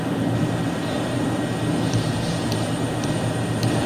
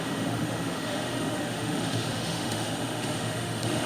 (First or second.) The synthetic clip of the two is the second